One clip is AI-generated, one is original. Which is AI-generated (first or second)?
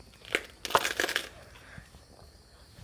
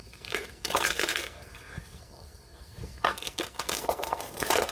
second